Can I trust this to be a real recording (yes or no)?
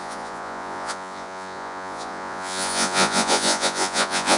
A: no